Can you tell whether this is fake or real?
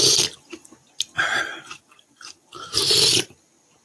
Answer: real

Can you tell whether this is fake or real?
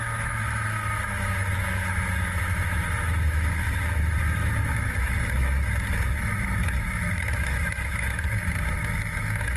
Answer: fake